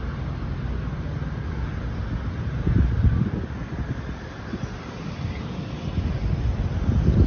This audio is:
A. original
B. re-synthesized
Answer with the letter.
A